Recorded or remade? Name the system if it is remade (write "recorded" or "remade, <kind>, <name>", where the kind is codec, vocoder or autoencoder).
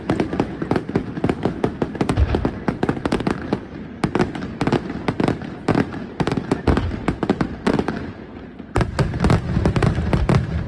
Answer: recorded